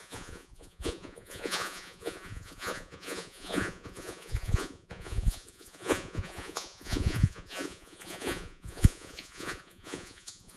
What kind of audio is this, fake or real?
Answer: fake